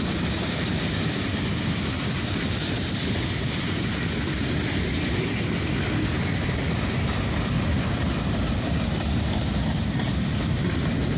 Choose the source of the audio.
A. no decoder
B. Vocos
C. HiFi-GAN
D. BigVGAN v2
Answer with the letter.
D